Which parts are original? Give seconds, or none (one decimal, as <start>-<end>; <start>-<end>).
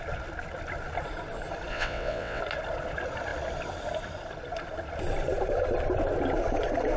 0.0-1.7; 2.4-7.0